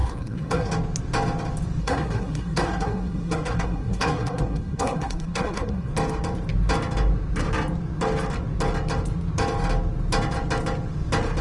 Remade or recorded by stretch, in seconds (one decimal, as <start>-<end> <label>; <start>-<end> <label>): 0.0-0.7 remade; 0.7-1.8 recorded; 1.8-5.9 remade; 5.9-11.4 recorded